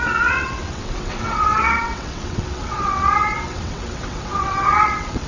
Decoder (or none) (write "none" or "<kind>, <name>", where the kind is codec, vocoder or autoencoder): vocoder, WaveNeXt